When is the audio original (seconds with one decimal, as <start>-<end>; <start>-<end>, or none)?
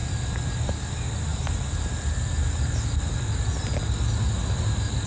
0.0-5.1